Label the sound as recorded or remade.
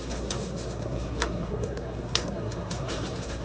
remade